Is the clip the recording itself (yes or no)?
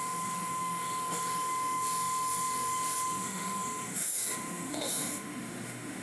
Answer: no